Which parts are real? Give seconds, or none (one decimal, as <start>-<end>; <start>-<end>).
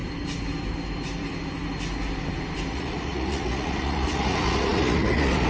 0.0-2.7